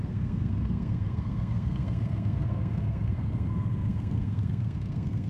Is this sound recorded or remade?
remade